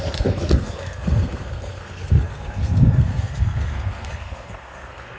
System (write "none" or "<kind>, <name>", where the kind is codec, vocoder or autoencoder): codec, SNAC